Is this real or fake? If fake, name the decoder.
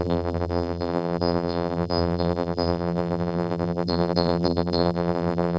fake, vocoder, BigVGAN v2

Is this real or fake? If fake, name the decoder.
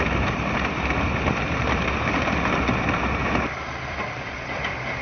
fake, vocoder, BigVGAN v2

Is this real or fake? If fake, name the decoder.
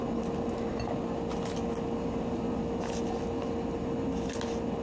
real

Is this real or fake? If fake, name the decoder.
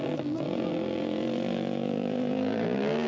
fake, vocoder, BigVGAN v2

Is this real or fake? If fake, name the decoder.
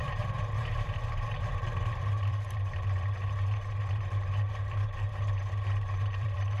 fake, vocoder, BigVGAN v2